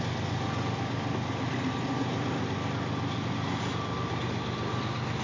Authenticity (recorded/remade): recorded